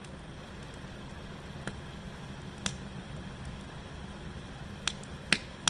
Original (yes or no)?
yes